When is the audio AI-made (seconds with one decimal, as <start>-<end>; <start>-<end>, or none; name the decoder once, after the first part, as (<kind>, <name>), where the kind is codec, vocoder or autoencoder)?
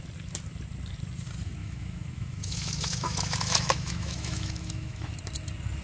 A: 1.6-5.1 (autoencoder, DAC-VAE)